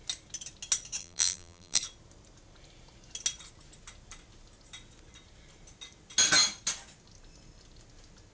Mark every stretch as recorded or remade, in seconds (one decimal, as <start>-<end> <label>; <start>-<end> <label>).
0.0-1.0 recorded; 1.0-1.8 remade; 1.8-8.3 recorded